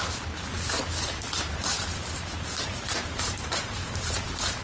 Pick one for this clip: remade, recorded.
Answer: remade